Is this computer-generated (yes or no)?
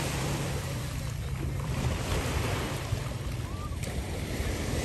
yes